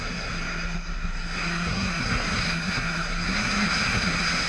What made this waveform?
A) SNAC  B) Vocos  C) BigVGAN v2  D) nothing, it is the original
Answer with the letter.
A